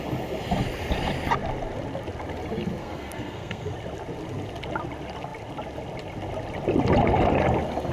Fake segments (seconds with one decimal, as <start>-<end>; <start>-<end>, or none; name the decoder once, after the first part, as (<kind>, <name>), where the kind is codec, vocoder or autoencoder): 2.8-3.7 (codec, SNAC)

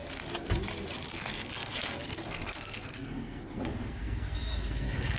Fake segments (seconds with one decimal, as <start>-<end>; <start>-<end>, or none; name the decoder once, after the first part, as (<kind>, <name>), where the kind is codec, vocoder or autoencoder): 1.1-5.2 (codec, SNAC)